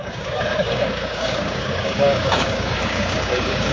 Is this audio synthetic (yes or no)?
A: yes